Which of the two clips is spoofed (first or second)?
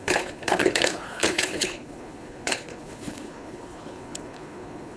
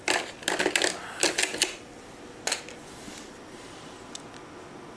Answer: first